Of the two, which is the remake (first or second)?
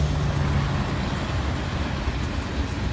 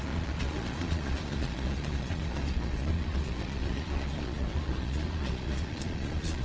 second